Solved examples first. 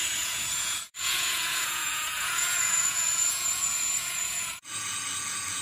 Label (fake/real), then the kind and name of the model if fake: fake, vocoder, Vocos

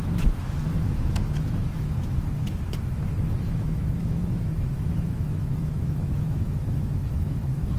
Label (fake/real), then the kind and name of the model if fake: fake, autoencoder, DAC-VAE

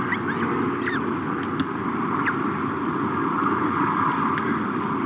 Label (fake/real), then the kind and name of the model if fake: real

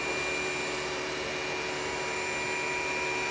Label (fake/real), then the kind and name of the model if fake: real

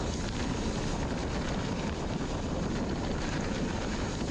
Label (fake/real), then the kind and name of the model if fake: real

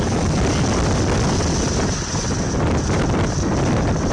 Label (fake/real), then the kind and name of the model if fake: real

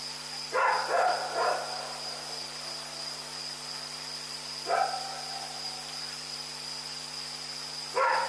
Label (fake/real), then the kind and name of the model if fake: fake, vocoder, BigVGAN v2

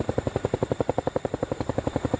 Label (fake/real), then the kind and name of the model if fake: fake, vocoder, BigVGAN v2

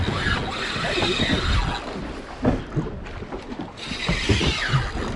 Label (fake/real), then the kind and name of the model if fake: real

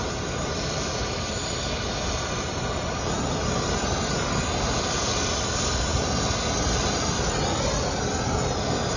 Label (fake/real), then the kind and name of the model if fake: real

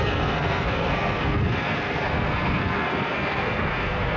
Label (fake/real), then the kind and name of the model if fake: fake, codec, SNAC